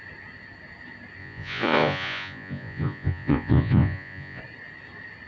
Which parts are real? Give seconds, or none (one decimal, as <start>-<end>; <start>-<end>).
0.0-1.2; 4.4-5.3